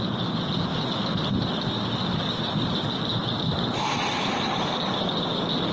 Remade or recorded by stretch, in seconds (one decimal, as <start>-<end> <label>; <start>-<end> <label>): 0.0-0.7 recorded; 0.7-1.3 remade; 1.3-3.3 recorded; 3.3-4.7 remade; 4.7-5.7 recorded